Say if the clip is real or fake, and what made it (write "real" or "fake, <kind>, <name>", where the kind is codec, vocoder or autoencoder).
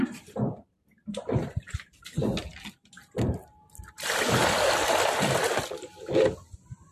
fake, vocoder, BigVGAN v2